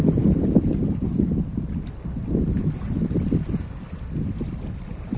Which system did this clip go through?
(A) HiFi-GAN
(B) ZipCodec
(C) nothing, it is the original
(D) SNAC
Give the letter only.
C